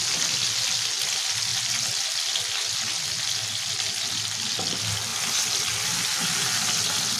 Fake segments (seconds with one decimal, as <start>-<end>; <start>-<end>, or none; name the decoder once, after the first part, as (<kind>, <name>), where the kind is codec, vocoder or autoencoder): none